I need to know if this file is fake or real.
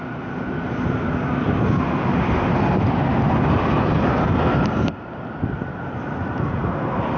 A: real